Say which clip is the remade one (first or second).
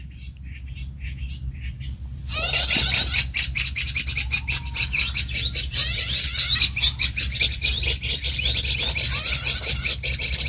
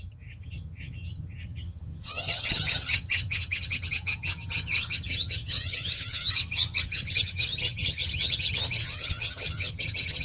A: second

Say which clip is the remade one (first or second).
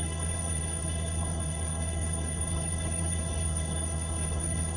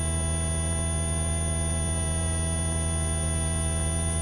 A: first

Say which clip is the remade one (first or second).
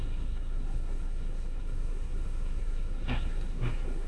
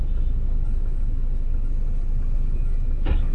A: first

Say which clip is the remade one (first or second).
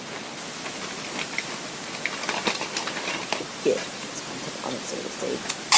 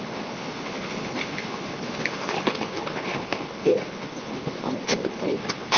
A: second